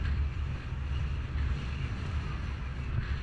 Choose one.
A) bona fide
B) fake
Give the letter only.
A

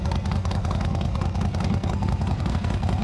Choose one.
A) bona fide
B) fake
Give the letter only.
B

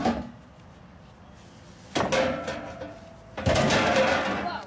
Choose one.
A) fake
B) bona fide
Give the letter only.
B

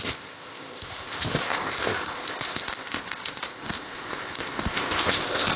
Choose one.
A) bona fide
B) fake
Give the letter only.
B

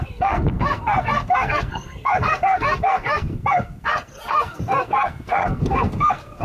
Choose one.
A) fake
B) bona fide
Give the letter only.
A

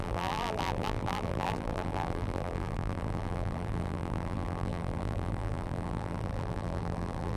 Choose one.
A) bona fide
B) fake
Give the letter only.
B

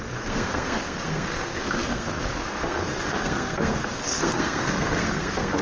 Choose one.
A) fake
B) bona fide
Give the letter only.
A